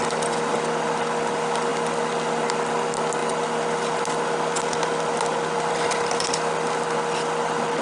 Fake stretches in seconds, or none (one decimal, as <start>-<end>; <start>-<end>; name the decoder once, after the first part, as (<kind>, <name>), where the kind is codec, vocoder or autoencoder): none